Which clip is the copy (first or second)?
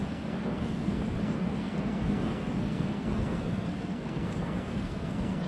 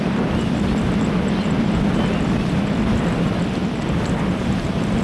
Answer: first